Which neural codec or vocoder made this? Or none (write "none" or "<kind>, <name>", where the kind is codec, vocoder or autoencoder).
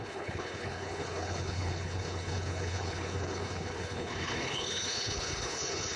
codec, HILCodec